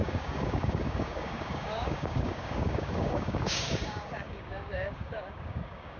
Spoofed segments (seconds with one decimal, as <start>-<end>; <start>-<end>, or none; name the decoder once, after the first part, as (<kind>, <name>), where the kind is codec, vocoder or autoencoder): 0.0-6.0 (codec, DAC)